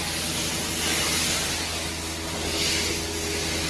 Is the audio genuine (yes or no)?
yes